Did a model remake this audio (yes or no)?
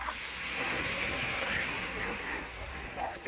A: yes